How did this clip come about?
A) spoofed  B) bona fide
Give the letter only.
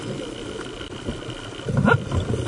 B